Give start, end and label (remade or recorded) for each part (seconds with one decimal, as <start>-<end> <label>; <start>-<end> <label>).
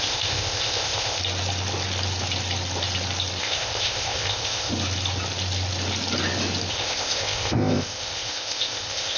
0.0-1.2 remade; 1.2-3.4 recorded; 3.4-4.7 remade; 4.7-6.7 recorded; 6.7-9.2 remade